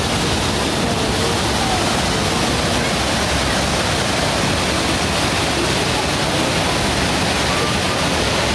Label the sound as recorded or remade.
recorded